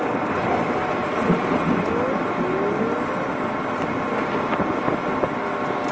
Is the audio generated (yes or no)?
no